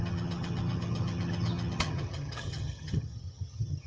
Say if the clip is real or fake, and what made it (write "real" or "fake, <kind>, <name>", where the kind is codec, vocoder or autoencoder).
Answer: fake, vocoder, HiFi-GAN